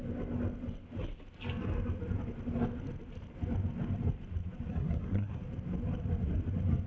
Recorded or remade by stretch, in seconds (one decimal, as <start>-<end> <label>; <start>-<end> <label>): 0.0-4.7 recorded; 4.7-5.4 remade; 5.4-6.9 recorded